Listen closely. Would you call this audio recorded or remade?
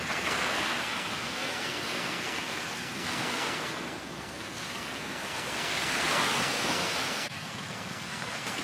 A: remade